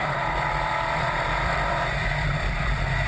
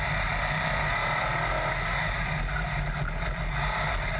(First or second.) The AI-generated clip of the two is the first